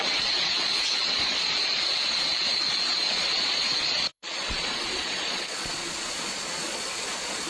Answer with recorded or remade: remade